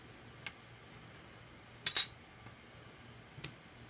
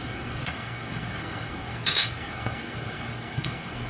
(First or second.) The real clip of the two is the first